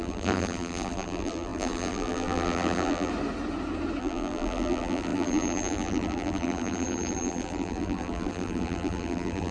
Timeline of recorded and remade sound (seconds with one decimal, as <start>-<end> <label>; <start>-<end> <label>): 0.0-3.1 remade; 3.1-4.0 recorded; 4.0-9.5 remade